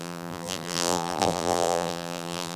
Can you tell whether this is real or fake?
fake